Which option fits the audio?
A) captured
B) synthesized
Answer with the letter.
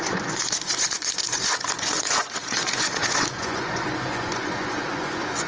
B